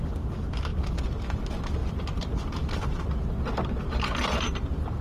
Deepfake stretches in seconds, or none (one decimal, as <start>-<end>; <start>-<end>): 0.7-1.4; 1.8-5.0